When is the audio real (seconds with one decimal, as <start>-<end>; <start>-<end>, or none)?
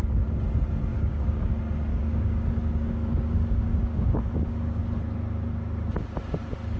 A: 0.0-0.9; 1.5-1.9; 4.8-6.8